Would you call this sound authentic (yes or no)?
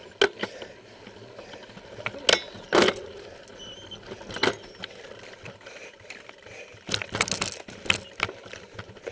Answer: yes